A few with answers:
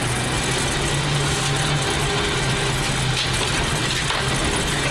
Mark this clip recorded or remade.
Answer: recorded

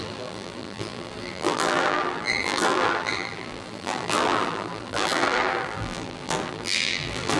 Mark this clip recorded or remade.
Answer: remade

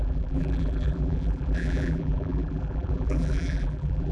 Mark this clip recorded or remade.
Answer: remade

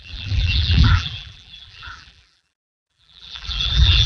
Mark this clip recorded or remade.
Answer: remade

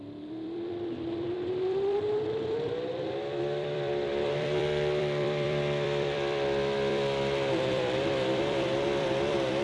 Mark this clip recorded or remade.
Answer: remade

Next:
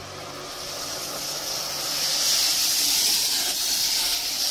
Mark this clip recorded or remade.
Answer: recorded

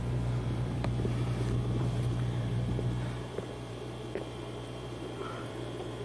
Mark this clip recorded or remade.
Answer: remade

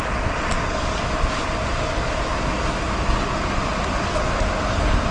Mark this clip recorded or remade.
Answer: recorded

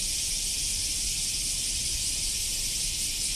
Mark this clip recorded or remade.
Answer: remade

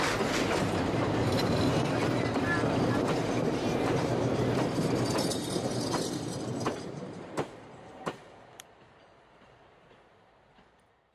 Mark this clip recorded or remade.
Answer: remade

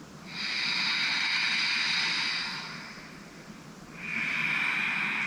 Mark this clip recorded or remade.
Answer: recorded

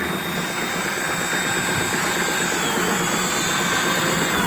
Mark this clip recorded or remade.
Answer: recorded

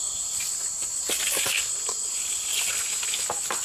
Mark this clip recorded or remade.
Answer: recorded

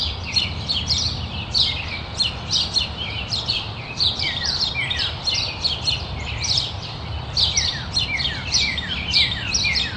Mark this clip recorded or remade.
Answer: remade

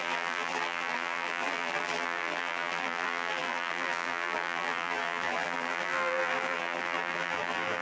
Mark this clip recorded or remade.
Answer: remade